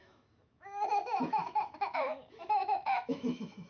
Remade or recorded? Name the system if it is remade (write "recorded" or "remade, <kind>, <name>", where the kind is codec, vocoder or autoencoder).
remade, autoencoder, DAC-VAE